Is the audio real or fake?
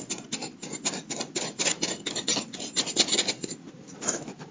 real